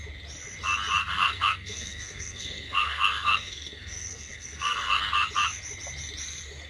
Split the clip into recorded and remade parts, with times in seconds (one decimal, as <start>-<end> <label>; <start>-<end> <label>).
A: 0.0-1.0 recorded; 1.0-5.0 remade; 5.0-6.7 recorded